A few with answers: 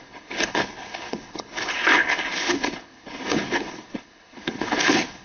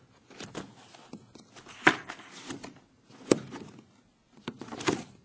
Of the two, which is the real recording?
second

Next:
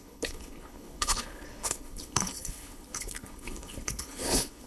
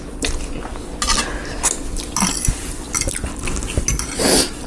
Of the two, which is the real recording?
second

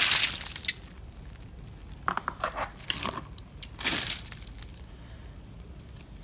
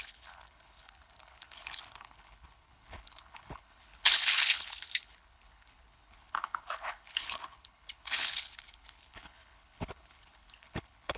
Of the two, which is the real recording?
first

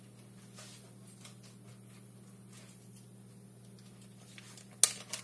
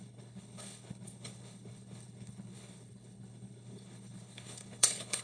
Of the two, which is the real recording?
first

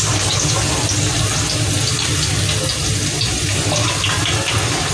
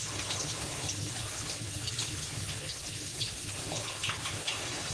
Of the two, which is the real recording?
first